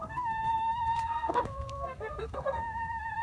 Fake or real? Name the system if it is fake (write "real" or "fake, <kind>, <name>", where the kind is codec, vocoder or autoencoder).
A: fake, codec, SNAC